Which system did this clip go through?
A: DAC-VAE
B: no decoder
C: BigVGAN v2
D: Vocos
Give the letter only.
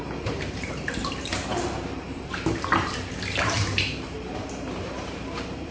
C